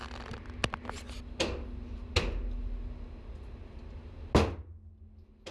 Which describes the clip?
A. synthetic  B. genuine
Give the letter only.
B